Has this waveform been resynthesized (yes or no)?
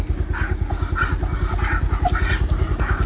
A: no